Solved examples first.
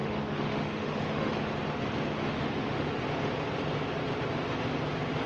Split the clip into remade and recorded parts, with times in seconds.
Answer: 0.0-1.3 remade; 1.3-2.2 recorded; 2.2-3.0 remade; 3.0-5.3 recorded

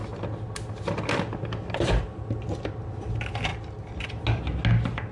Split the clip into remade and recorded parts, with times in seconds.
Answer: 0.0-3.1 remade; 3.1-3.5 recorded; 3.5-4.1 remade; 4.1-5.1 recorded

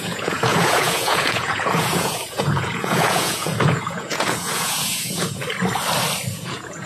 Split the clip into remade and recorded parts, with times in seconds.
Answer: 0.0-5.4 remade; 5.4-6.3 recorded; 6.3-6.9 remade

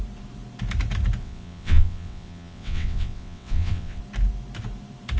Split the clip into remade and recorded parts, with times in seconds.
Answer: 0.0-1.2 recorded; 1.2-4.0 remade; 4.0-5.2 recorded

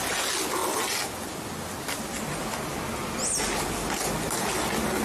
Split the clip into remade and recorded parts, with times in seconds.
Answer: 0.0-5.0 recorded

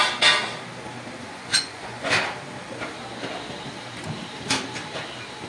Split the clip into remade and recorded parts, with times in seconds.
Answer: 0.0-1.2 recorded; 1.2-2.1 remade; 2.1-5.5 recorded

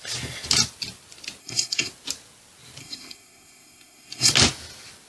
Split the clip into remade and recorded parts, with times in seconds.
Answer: 0.0-1.4 recorded; 1.4-1.9 remade; 1.9-2.8 recorded; 2.8-4.3 remade; 4.3-5.1 recorded

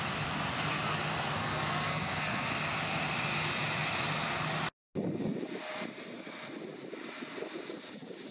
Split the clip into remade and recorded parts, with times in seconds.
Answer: 0.0-1.4 recorded; 1.4-2.5 remade; 2.5-8.3 recorded